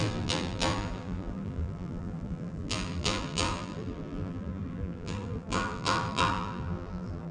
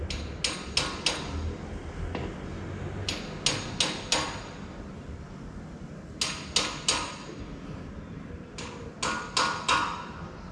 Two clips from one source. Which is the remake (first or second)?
first